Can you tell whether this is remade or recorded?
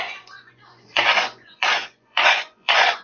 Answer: remade